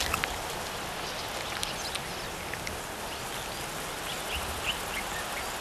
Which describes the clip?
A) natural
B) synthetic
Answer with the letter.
A